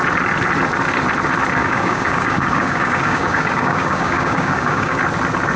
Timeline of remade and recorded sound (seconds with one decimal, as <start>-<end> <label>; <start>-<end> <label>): 0.0-1.6 recorded; 1.6-5.0 remade; 5.0-5.6 recorded